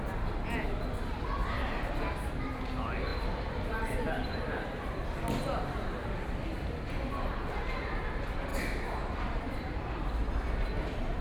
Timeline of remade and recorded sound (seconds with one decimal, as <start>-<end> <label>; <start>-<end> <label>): 0.0-1.4 recorded; 1.4-2.0 remade; 2.0-3.1 recorded; 3.1-5.2 remade; 5.2-8.5 recorded; 8.5-10.0 remade; 10.0-11.2 recorded